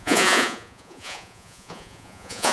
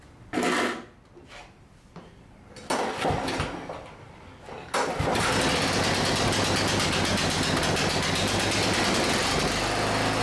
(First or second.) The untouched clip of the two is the second